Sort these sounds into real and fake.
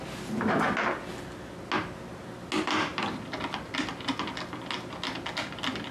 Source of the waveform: real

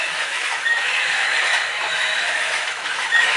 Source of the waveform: fake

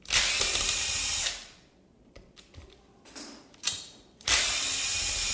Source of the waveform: fake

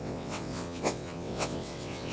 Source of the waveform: fake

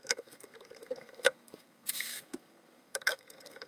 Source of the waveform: fake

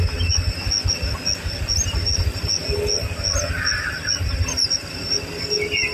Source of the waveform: real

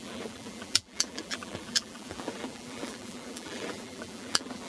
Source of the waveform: fake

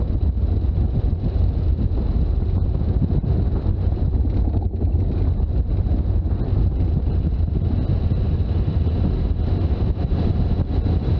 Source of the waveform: real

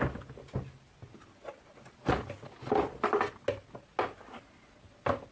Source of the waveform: real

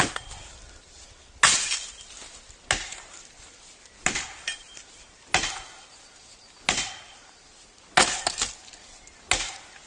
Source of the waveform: real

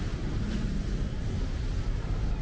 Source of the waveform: real